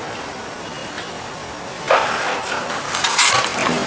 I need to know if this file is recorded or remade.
recorded